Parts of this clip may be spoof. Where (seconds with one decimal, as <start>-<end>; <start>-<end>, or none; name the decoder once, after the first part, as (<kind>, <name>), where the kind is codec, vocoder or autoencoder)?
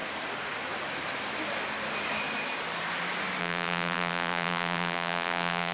3.4-5.7 (vocoder, BigVGAN v2)